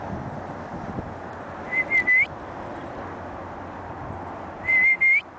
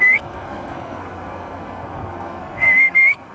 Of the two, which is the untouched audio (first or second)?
first